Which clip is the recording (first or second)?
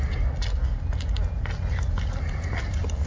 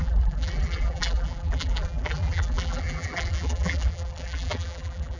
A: first